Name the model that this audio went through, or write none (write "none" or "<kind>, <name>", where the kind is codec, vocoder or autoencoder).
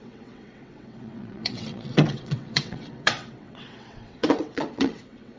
vocoder, WaveNeXt